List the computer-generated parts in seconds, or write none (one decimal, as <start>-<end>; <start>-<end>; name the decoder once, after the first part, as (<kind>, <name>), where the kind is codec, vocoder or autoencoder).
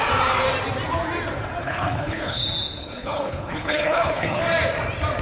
1.6-2.4 (codec, HILCodec); 2.8-4.4